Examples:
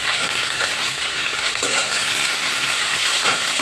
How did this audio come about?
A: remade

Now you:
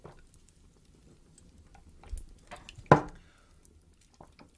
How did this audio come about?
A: recorded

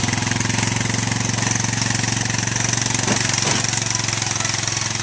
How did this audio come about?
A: recorded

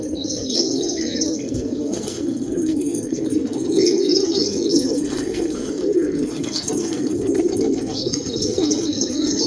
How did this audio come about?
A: remade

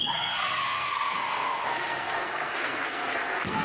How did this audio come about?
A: remade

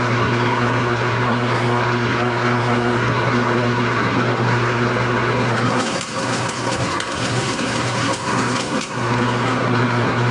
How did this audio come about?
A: remade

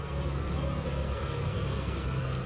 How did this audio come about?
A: remade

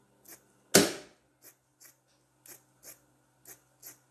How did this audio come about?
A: recorded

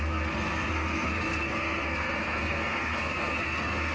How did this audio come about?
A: remade